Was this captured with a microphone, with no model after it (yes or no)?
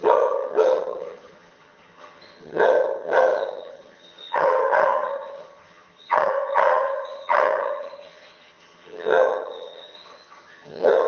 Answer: no